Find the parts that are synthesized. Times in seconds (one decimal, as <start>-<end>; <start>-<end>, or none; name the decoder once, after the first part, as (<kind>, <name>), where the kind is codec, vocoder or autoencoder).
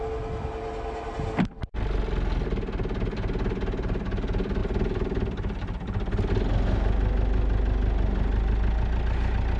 none